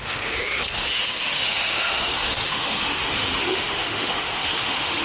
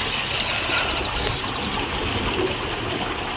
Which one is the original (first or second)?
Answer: second